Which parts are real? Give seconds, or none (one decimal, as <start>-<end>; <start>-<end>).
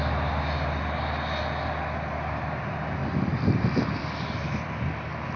0.0-5.4